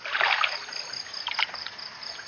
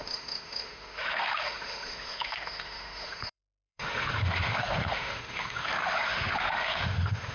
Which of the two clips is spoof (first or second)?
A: second